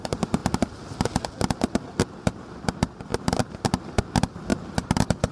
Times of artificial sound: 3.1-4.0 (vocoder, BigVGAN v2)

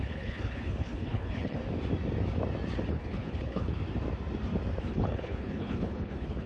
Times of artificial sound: 0.0-1.6 (codec, HILCodec); 2.9-3.8; 4.8-6.5

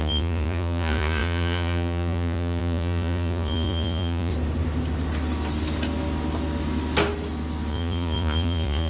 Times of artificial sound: 0.0-4.3 (vocoder, Vocos); 7.7-8.9

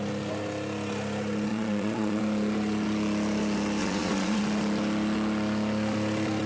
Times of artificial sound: 1.5-2.2 (vocoder, Vocos); 3.8-4.4

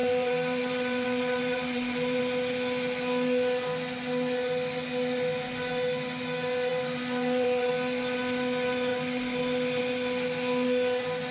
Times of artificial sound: 0.0-2.2 (vocoder, BigVGAN v2); 6.7-7.7

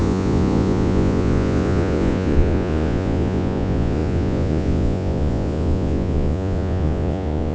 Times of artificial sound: 0.0-7.5 (vocoder, Vocos)